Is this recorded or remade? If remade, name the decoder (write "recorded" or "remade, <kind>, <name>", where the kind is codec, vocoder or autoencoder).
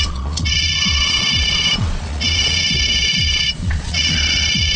remade, vocoder, Vocos